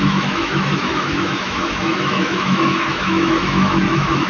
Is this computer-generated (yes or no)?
yes